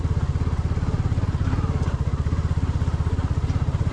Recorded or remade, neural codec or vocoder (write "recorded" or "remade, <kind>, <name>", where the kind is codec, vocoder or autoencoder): recorded